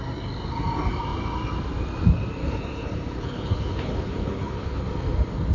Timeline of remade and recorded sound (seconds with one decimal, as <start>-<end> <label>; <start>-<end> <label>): 0.0-2.4 recorded; 2.4-4.9 remade; 4.9-5.5 recorded